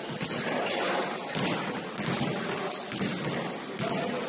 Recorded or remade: recorded